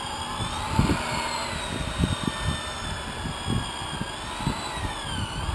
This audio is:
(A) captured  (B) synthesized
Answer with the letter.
A